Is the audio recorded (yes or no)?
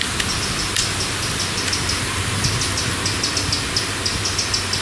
yes